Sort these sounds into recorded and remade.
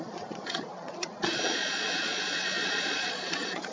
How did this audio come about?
remade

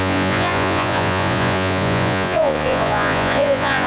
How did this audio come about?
remade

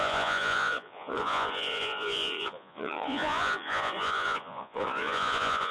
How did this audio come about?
remade